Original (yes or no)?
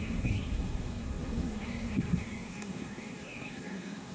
no